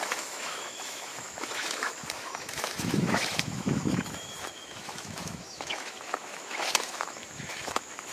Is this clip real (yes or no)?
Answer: no